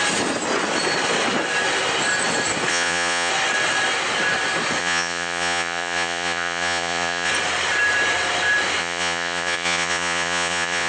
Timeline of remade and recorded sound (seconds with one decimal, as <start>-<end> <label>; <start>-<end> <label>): 0.0-2.7 recorded; 2.7-3.3 remade; 3.3-4.8 recorded; 4.8-7.3 remade; 7.3-8.8 recorded; 8.8-10.9 remade